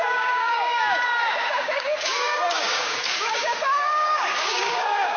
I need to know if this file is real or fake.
fake